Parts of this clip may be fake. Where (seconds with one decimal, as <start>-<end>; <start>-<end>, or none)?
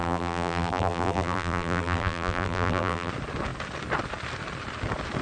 0.0-3.1